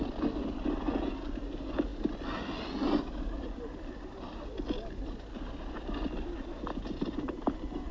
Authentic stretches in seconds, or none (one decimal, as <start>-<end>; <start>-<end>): 0.0-7.9